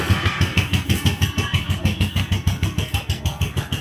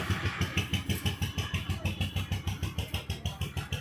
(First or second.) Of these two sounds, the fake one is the first